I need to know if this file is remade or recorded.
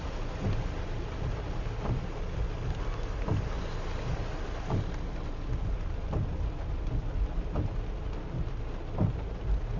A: recorded